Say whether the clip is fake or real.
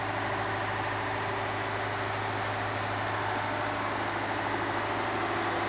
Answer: real